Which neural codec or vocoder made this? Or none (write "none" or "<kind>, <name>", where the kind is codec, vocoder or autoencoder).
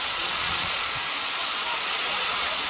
vocoder, Vocos